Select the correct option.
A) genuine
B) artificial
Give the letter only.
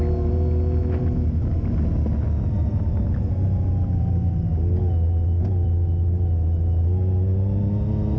A